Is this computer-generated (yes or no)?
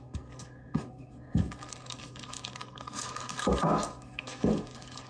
yes